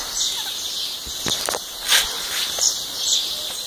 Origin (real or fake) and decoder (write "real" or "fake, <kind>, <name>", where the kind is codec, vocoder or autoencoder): real